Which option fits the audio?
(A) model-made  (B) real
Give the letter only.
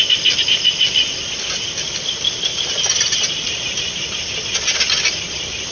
B